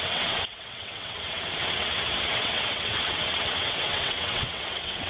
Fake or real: fake